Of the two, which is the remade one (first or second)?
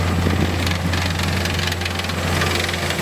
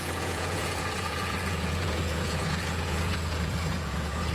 second